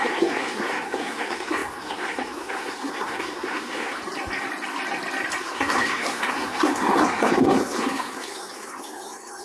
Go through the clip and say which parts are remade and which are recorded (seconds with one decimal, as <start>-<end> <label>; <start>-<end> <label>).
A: 0.0-4.0 remade; 4.0-5.4 recorded; 5.4-9.4 remade